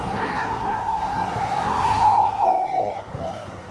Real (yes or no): no